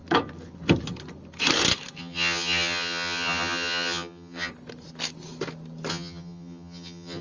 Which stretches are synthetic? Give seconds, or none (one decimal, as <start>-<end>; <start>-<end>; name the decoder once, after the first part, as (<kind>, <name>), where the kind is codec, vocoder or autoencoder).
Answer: 2.0-4.5 (vocoder, HiFi-GAN); 5.9-7.2